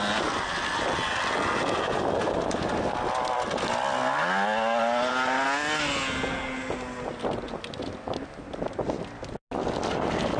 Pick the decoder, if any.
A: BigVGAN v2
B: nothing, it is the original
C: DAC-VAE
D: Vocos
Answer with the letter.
B